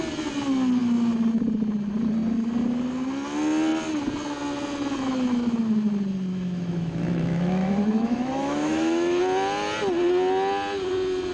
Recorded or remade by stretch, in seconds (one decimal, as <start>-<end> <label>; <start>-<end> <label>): 0.0-6.3 recorded; 6.3-9.2 remade; 9.2-11.3 recorded